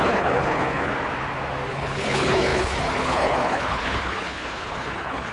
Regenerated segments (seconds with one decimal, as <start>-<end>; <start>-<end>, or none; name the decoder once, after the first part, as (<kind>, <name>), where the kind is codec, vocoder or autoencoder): 0.0-0.9 (codec, HILCodec); 1.7-5.3